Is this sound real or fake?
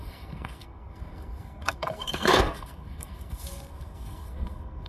fake